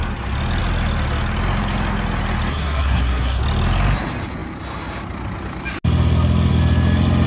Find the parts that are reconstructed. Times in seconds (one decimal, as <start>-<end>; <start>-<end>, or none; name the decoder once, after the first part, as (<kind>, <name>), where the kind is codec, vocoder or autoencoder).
2.5-3.4 (codec, SNAC)